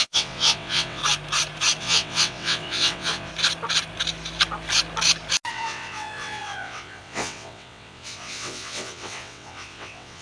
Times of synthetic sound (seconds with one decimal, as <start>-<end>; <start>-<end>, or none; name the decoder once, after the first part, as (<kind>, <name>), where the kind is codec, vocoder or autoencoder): 0.0-1.0 (vocoder, WaveNeXt); 1.8-3.3; 5.5-10.2